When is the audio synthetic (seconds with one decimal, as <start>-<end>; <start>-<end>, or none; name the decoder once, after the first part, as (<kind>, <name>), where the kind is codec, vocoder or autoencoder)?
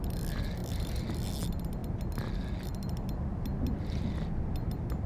none